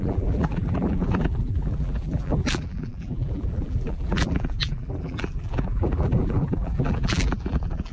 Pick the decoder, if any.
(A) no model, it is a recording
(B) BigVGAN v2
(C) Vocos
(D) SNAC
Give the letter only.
B